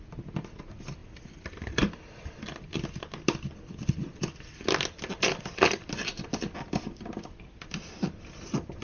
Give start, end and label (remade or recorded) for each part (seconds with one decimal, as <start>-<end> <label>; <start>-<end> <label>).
0.0-8.8 recorded